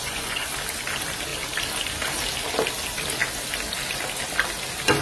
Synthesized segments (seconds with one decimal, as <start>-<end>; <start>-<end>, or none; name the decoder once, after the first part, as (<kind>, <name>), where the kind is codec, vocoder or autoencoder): 0.0-0.5 (vocoder, Vocos)